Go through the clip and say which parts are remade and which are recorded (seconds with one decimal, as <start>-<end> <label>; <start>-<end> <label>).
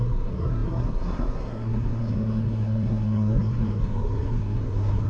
0.0-5.1 remade